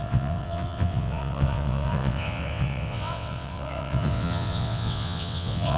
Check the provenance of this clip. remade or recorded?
remade